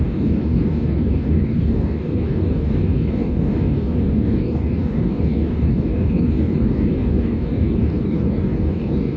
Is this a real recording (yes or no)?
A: no